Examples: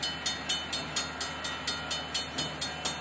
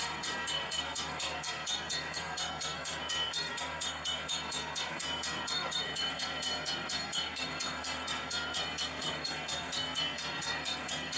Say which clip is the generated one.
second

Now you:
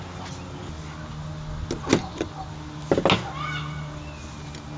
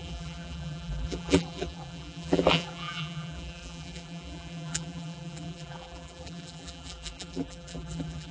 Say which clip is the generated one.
second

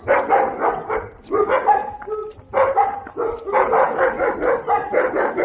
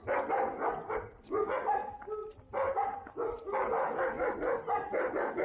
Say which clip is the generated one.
first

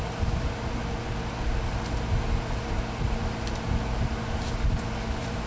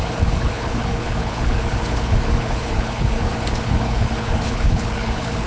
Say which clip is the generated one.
second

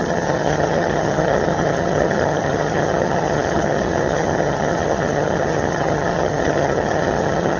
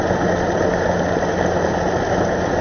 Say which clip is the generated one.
first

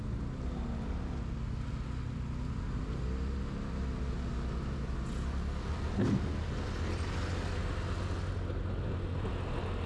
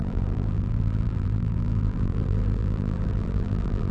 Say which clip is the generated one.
second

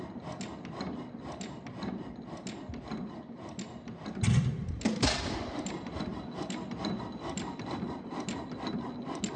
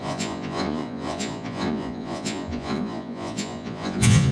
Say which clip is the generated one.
second